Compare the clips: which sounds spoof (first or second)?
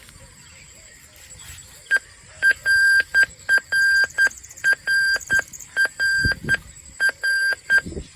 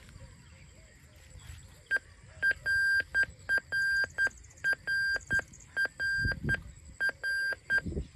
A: first